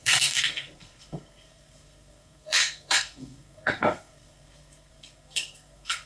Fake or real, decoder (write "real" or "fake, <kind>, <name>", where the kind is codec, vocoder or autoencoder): fake, codec, SNAC